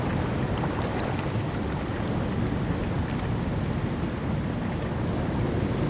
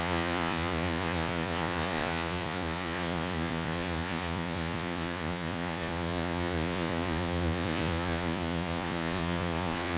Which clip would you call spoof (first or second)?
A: second